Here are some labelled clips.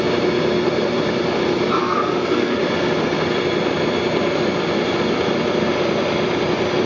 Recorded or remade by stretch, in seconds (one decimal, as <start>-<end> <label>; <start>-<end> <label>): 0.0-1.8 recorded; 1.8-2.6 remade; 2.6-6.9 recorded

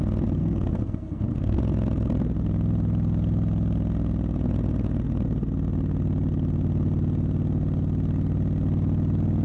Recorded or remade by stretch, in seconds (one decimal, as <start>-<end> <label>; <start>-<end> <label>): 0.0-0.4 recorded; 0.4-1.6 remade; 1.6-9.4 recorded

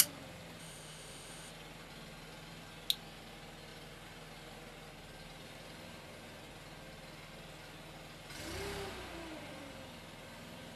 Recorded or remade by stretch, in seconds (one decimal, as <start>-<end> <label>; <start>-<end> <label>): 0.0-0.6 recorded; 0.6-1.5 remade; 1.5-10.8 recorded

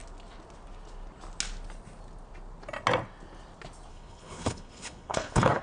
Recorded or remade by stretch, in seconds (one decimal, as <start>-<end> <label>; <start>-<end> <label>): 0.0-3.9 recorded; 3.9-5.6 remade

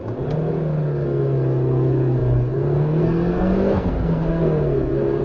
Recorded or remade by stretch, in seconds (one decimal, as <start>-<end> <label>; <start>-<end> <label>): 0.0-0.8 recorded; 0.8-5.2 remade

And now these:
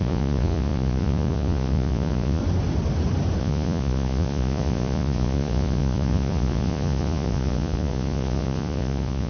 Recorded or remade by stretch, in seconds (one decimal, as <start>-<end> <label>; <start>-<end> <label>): 0.0-2.4 remade; 2.4-3.4 recorded; 3.4-9.3 remade